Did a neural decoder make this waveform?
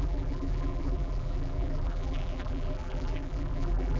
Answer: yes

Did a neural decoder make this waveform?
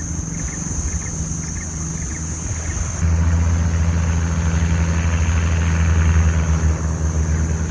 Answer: no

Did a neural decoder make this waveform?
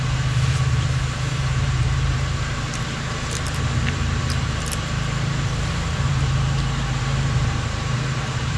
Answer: yes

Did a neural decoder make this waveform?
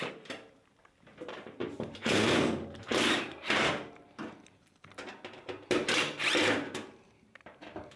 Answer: yes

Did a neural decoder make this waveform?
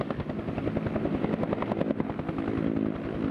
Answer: no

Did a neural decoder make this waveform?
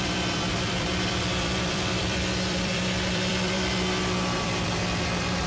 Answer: yes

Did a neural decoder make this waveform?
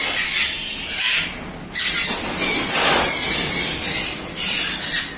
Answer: no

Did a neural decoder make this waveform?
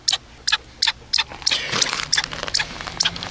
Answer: no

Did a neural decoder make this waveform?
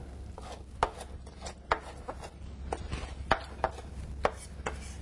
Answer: no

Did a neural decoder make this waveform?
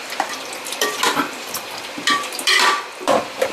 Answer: yes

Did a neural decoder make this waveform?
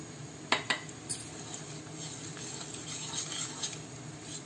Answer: no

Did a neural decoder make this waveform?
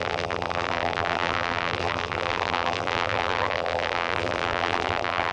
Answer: yes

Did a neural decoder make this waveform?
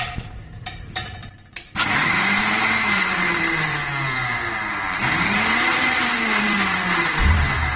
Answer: yes